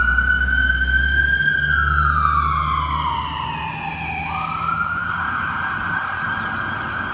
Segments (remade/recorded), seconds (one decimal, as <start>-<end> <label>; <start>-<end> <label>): 0.0-5.0 recorded; 5.0-5.7 remade; 5.7-7.1 recorded